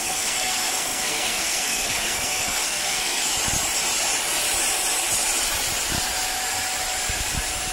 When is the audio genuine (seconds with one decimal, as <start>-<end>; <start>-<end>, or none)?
3.3-7.7